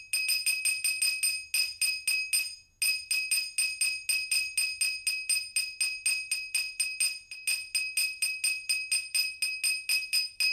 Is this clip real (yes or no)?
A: yes